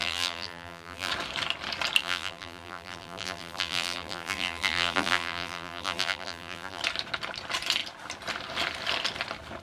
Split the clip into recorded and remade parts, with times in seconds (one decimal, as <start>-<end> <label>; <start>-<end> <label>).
0.0-1.1 remade; 1.1-2.0 recorded; 2.0-6.8 remade; 6.8-9.6 recorded